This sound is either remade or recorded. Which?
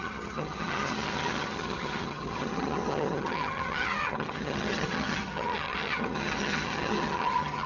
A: remade